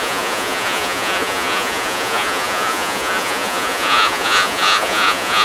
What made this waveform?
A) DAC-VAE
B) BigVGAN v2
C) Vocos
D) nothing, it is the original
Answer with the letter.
C